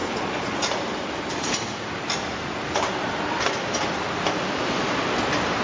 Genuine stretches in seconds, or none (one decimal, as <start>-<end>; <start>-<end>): 1.9-2.6; 3.1-5.6